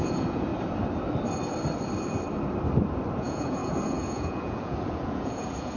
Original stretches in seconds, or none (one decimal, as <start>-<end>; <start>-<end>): 0.5-3.2